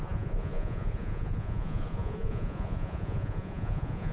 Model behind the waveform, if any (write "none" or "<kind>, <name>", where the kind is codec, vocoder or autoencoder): vocoder, Vocos